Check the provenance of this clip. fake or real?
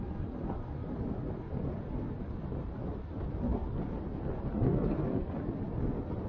real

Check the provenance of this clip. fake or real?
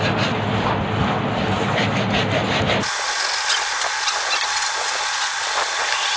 real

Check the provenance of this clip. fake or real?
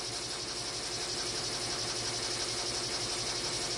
real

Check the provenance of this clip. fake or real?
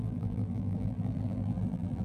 fake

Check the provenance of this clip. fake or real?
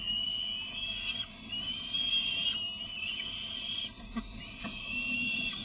real